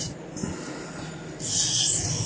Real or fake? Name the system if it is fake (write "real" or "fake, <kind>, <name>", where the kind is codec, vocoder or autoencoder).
real